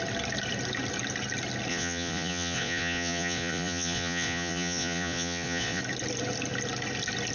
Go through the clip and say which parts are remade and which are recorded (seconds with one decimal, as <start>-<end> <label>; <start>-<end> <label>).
0.0-1.7 recorded; 1.7-5.8 remade; 5.8-7.3 recorded